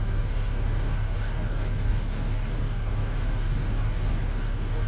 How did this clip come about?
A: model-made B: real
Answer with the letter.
A